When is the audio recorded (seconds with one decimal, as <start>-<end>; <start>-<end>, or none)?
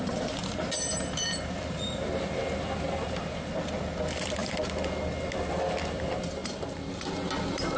4.4-5.8